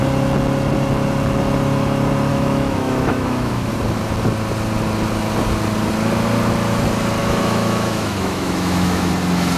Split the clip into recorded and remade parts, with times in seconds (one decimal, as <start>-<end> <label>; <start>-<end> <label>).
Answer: 0.0-2.3 recorded; 2.3-3.7 remade; 3.7-7.2 recorded; 7.2-9.1 remade; 9.1-9.6 recorded